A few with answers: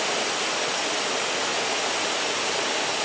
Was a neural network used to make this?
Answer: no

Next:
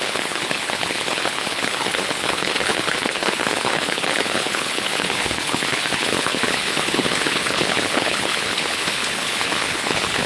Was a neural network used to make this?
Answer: yes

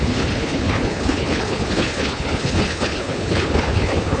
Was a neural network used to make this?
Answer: yes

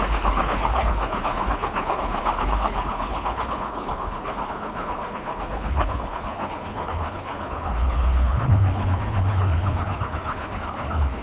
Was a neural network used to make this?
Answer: yes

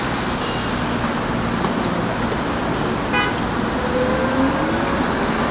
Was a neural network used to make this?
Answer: no